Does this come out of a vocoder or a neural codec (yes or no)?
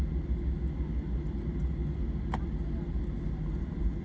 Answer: no